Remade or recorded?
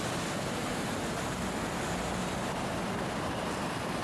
recorded